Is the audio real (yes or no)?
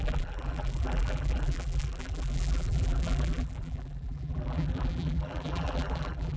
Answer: no